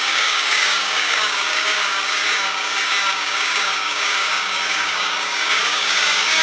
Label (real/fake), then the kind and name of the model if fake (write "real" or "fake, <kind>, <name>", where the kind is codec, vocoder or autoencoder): fake, codec, DAC